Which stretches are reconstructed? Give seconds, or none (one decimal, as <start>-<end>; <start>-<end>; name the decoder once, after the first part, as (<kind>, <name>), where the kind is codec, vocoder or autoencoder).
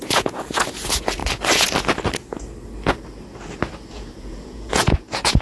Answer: 0.0-1.2 (vocoder, Vocos); 3.9-5.4